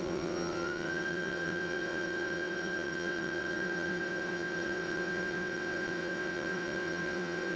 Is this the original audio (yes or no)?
no